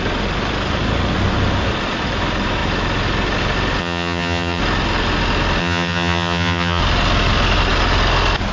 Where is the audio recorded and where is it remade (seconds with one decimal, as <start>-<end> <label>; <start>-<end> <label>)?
0.0-3.8 recorded; 3.8-4.6 remade; 4.6-5.6 recorded; 5.6-6.8 remade; 6.8-8.5 recorded